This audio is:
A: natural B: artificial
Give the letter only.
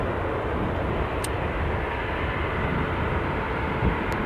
A